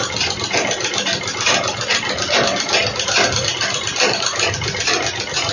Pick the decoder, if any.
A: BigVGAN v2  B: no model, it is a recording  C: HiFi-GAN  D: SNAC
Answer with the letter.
B